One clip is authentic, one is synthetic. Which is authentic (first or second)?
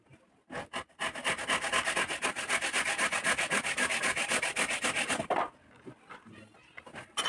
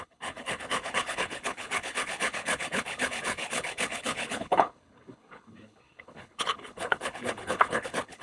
first